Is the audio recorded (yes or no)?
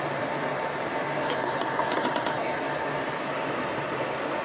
yes